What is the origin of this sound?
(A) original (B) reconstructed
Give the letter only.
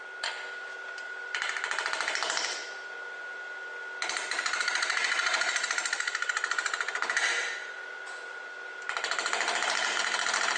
A